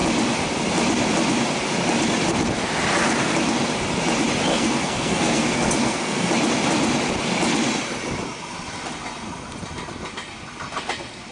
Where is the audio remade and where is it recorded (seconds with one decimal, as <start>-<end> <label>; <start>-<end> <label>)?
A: 0.0-4.5 recorded; 4.5-6.3 remade; 6.3-11.3 recorded